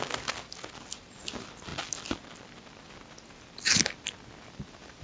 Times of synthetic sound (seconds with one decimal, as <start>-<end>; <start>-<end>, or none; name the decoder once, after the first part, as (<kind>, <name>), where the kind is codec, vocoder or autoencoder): none